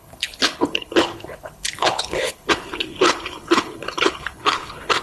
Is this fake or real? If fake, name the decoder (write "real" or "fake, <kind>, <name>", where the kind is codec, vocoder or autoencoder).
fake, codec, HILCodec